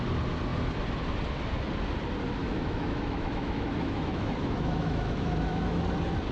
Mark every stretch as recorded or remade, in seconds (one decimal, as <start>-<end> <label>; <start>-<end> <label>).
0.0-2.4 recorded; 2.4-5.8 remade; 5.8-6.3 recorded